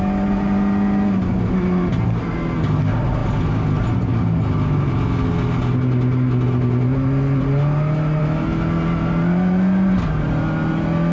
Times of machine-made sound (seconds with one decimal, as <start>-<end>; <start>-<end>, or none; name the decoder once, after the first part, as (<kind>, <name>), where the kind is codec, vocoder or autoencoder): none